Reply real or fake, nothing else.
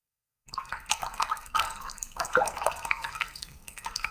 fake